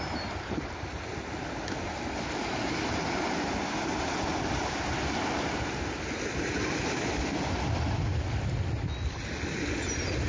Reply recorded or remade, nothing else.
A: recorded